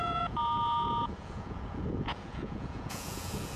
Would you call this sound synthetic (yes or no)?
yes